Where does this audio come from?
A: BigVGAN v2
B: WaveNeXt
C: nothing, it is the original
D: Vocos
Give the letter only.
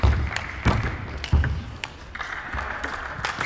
C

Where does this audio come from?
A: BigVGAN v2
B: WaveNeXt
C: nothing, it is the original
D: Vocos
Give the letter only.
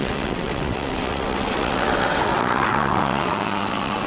B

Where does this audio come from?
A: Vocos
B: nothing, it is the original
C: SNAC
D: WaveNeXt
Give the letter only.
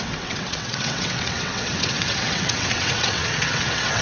D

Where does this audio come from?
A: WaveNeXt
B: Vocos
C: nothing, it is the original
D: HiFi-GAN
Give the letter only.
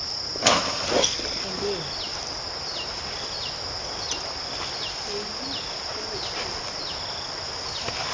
C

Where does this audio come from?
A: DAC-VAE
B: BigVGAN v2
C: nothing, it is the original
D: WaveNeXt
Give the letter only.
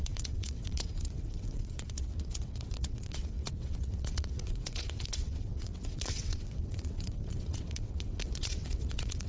D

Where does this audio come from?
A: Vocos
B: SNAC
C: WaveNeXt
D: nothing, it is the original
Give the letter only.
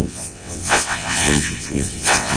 C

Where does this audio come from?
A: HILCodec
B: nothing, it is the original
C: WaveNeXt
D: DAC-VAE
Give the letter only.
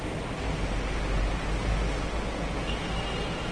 B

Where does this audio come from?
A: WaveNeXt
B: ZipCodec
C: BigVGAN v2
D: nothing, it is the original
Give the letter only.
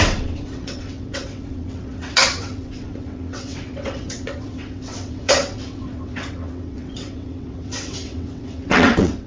A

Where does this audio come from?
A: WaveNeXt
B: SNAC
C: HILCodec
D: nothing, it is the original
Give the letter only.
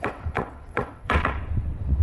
A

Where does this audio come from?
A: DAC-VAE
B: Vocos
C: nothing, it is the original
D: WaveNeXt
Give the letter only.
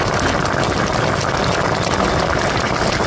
C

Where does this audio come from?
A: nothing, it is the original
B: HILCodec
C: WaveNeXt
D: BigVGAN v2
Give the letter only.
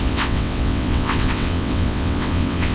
C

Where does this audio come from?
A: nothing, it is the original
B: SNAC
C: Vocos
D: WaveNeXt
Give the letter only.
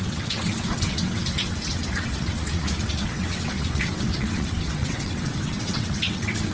D